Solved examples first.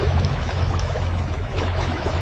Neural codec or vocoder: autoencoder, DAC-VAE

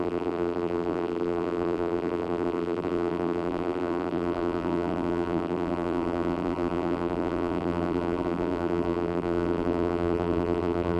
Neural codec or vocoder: vocoder, BigVGAN v2